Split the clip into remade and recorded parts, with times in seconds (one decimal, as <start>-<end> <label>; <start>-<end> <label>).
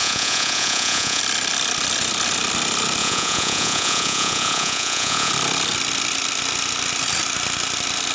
0.0-1.2 remade; 1.2-3.0 recorded; 3.0-5.3 remade; 5.3-8.1 recorded